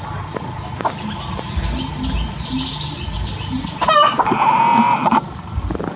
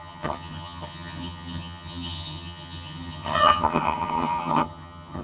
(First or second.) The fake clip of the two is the second